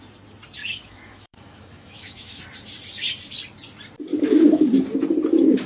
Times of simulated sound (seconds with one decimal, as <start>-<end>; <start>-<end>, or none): 0.6-2.4; 4.1-4.7